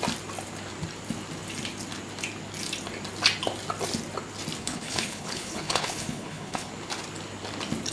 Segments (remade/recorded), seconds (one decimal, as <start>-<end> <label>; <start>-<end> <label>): 0.0-4.6 recorded; 4.6-6.7 remade; 6.7-7.9 recorded